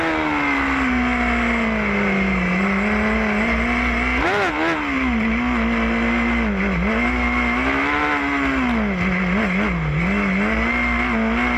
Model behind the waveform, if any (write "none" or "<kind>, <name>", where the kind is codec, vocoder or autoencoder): none